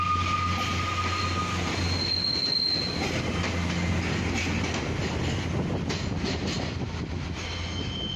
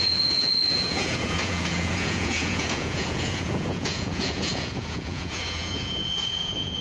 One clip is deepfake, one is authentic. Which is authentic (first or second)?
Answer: first